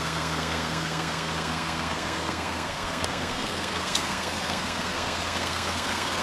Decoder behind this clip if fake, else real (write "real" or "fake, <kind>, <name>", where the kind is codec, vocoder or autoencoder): fake, codec, SNAC